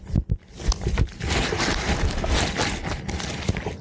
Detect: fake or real real